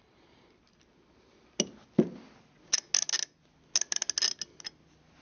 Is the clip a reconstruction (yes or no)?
no